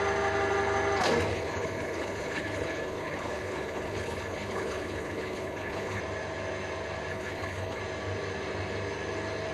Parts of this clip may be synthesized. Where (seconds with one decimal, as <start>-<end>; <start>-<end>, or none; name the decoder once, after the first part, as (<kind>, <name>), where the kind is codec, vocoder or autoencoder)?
1.3-6.0 (codec, HILCodec); 7.1-7.8